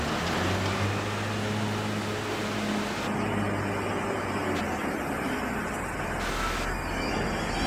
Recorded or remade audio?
recorded